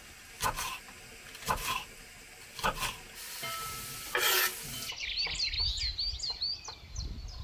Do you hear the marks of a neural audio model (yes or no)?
no